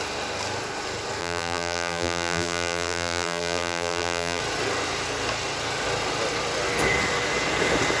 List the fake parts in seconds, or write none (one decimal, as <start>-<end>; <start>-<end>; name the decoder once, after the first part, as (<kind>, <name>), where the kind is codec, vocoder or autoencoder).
1.2-4.4 (vocoder, BigVGAN v2)